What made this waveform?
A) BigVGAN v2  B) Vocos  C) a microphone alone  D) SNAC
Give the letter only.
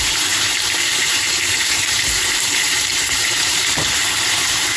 A